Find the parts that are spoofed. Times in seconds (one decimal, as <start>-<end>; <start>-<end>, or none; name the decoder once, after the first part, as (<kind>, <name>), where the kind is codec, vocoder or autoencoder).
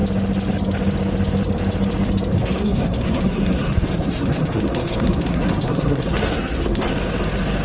2.3-6.9 (codec, SNAC)